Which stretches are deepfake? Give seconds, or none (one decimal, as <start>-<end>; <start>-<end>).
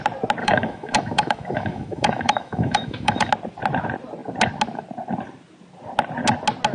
0.4-3.3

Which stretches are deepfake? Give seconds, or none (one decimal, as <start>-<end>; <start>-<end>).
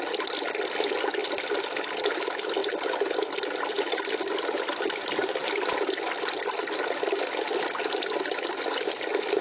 none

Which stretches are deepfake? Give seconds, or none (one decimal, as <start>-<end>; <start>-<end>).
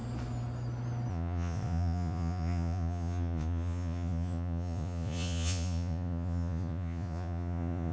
1.1-7.9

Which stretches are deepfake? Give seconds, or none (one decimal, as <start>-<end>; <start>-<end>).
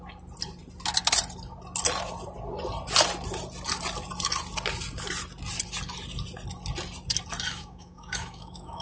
7.5-8.8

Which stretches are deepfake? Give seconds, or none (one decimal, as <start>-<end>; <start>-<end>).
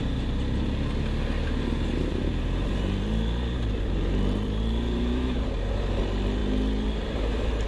2.1-5.5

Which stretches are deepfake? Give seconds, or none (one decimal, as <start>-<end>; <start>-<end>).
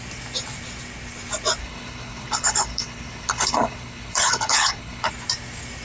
1.6-5.1